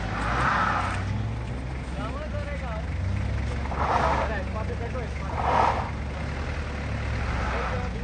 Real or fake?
real